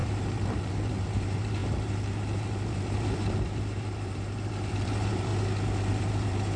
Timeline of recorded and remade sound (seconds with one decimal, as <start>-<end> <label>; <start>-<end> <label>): 0.0-5.3 remade; 5.3-5.9 recorded; 5.9-6.6 remade